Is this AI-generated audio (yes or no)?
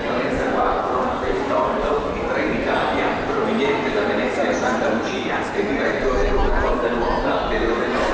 no